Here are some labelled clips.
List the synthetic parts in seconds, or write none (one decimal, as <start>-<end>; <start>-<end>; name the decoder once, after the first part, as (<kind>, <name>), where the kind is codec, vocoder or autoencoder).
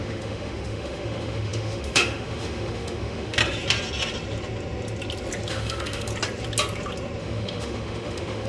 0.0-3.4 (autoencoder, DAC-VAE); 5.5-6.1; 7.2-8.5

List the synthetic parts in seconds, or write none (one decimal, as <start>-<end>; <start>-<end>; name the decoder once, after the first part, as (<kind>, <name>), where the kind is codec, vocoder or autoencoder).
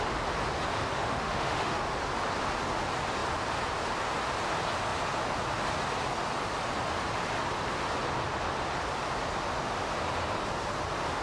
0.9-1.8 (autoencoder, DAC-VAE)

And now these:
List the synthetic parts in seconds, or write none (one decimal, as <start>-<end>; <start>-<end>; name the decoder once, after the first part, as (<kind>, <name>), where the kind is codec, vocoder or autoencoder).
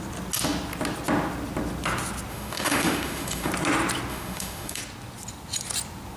2.3-3.5 (autoencoder, DAC-VAE); 4.1-4.8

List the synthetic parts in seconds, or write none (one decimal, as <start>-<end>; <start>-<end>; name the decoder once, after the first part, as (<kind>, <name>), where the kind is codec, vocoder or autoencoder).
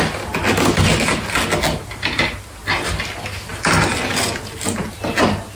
none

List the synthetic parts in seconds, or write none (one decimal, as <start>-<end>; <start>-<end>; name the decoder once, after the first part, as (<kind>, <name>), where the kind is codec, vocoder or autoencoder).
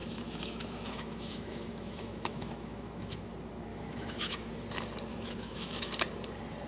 0.0-3.3 (autoencoder, DAC-VAE); 3.7-4.5; 5.1-5.9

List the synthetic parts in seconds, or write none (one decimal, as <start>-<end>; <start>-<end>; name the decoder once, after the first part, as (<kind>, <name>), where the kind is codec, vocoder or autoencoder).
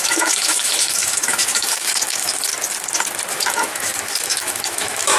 0.0-2.5 (autoencoder, DAC-VAE); 3.3-5.2